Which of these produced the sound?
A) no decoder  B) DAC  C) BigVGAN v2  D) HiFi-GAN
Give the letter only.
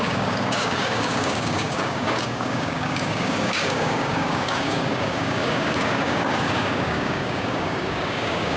B